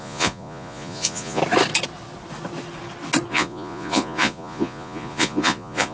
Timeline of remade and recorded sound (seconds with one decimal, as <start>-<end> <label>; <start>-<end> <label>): 0.0-1.4 remade; 1.4-3.3 recorded; 3.3-5.9 remade

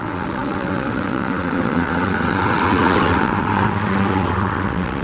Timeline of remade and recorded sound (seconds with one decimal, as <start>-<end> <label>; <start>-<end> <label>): 0.0-5.0 remade